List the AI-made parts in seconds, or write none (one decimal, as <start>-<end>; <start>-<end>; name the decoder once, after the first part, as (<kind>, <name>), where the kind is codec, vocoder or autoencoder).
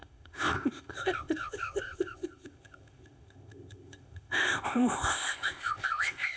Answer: 0.0-6.4 (codec, ZipCodec)